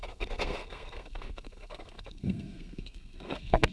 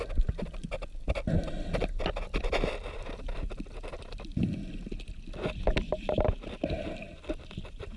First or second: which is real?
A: second